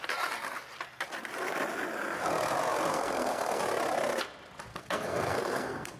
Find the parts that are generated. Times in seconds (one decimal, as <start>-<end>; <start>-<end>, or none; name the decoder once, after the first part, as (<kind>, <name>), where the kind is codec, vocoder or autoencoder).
2.9-3.6 (codec, SNAC); 4.7-6.0